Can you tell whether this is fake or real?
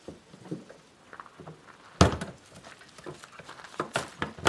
real